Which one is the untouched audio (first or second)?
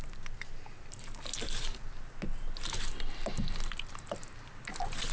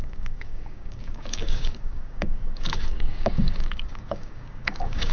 first